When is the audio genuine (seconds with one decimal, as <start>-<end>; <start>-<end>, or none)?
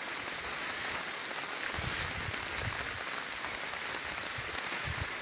1.2-4.3